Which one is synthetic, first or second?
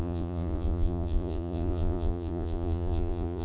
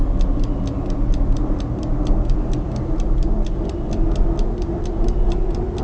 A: first